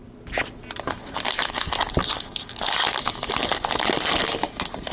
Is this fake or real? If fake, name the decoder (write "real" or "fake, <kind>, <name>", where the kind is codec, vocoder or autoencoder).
real